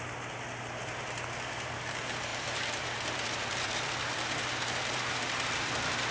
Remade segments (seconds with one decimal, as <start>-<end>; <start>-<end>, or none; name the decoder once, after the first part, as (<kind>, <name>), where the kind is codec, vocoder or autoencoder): 2.3-6.1 (vocoder, BigVGAN v2)